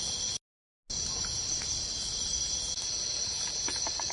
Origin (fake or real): real